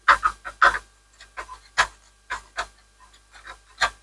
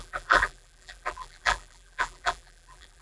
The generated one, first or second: second